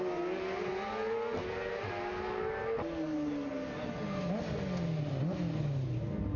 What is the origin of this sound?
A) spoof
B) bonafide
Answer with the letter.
B